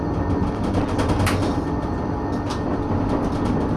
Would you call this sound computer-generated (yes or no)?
no